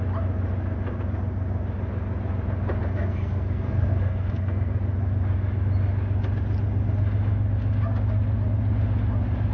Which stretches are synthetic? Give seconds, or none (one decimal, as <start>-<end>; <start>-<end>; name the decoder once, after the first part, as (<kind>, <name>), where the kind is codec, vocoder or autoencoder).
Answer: 2.8-4.8 (codec, SNAC)